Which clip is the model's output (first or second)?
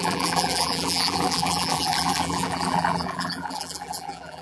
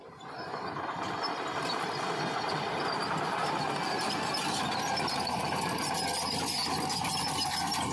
first